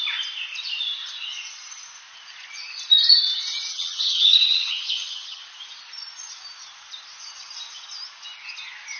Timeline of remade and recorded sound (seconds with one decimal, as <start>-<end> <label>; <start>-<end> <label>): 0.0-3.7 recorded; 3.7-5.4 remade; 5.4-9.0 recorded